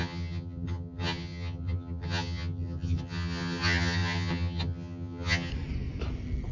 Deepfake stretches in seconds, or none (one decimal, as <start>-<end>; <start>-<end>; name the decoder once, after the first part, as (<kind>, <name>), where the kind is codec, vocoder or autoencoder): 0.0-5.5 (vocoder, HiFi-GAN)